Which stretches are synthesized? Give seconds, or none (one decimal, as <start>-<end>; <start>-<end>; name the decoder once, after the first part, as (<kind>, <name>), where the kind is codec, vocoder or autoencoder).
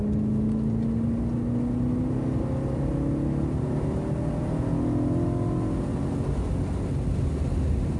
none